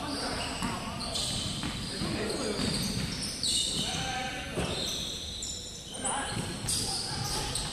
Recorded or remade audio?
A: remade